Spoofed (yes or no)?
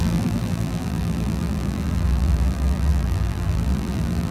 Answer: yes